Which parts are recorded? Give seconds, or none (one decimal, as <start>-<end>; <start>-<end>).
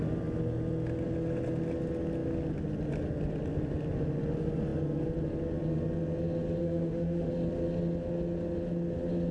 0.0-6.6; 7.3-9.3